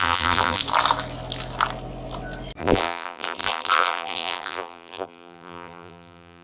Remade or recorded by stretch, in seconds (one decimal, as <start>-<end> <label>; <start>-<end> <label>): 0.0-0.6 remade; 0.6-2.6 recorded; 2.6-6.4 remade